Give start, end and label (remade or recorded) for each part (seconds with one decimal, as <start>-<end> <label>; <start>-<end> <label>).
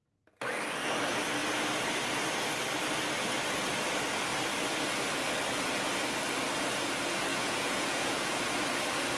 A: 0.0-7.3 recorded; 7.3-8.4 remade; 8.4-9.2 recorded